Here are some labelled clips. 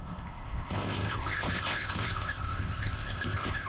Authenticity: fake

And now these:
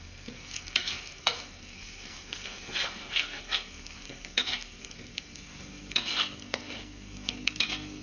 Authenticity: fake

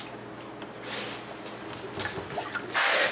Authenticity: real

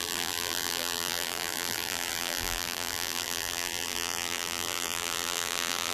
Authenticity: fake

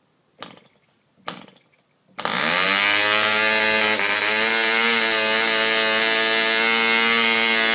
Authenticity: real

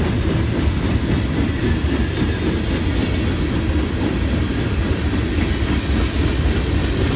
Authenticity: real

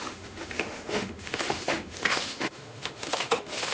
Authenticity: fake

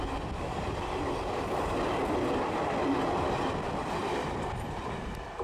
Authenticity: real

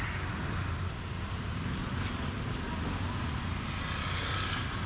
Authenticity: real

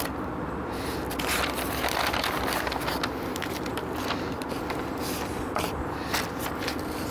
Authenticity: real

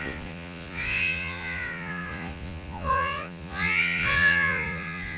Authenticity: fake